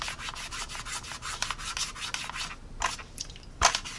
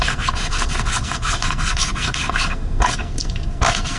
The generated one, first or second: second